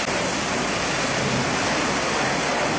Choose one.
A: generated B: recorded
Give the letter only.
B